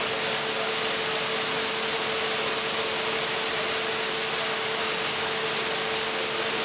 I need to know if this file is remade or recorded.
recorded